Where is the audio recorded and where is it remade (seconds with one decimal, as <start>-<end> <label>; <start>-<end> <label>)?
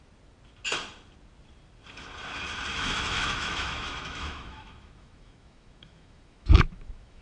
0.0-2.7 recorded; 2.7-7.2 remade